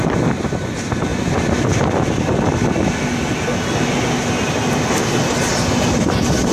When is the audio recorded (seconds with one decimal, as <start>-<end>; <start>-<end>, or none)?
0.0-6.5